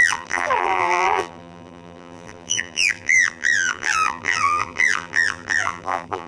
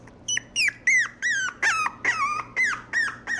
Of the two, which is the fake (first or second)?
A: first